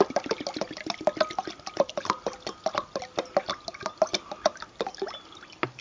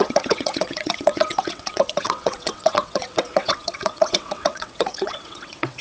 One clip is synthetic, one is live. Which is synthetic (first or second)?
second